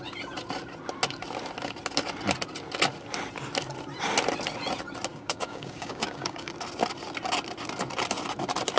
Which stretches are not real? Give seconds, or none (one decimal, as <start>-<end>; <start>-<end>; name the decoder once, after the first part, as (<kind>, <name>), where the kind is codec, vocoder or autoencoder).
5.1-6.5 (codec, DAC)

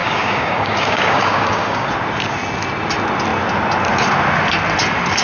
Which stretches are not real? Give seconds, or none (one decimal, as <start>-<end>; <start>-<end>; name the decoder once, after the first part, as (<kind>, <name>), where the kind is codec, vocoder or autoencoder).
0.0-1.9 (codec, DAC)

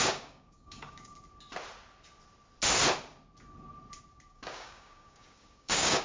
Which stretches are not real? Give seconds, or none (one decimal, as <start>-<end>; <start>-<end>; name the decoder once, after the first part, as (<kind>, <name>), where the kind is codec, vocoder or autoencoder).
0.0-1.1 (codec, DAC); 4.3-6.0